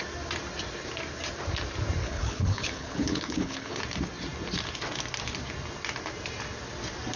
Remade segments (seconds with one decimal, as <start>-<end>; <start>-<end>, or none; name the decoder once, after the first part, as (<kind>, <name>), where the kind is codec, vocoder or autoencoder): 2.0-3.8 (codec, HILCodec)